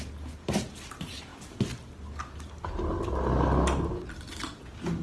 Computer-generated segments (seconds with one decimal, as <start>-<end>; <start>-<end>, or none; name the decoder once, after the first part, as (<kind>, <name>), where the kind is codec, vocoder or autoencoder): none